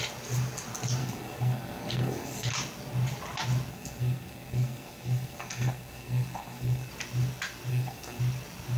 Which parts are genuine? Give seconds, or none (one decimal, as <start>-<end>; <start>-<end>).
0.0-1.0; 2.5-3.7; 6.9-7.7; 8.2-8.8

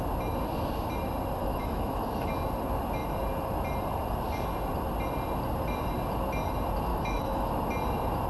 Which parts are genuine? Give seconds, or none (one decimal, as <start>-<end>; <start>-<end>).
0.0-1.4; 2.3-6.9; 7.5-8.3

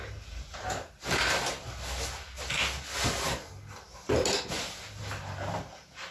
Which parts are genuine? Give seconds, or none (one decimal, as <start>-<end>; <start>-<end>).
0.0-6.1

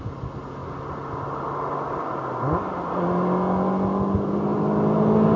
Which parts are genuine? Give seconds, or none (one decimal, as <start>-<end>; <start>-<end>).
0.0-5.4

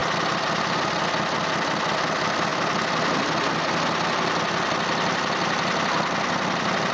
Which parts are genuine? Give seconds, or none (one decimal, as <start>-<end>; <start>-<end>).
0.0-6.9